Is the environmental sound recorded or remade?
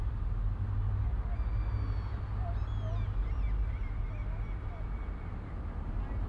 recorded